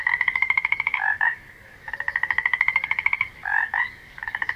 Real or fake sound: fake